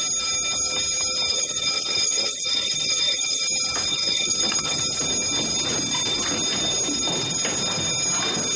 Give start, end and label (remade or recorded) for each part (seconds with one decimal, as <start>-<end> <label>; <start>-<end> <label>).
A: 0.0-1.3 recorded; 1.3-3.4 remade; 3.4-3.9 recorded; 3.9-4.8 remade; 4.8-8.6 recorded